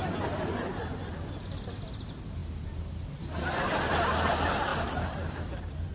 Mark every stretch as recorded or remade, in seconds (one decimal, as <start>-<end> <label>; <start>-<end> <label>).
0.0-5.9 recorded